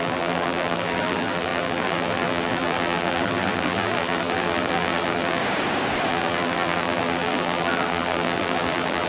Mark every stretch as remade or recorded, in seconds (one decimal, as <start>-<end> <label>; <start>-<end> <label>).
0.0-5.4 remade; 5.4-6.1 recorded; 6.1-9.1 remade